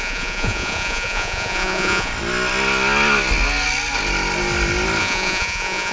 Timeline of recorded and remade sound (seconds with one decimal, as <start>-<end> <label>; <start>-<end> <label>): 0.0-2.1 remade; 2.1-5.0 recorded; 5.0-5.9 remade